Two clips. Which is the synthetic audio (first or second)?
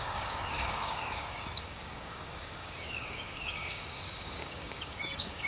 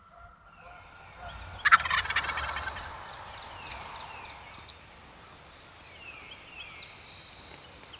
first